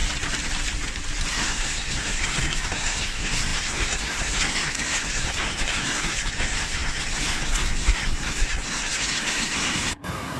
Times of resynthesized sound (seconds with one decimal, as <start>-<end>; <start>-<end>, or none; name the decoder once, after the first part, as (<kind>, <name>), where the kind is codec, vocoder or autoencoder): 1.3-10.4 (codec, SNAC)